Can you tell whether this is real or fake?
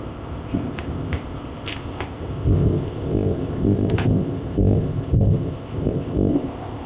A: fake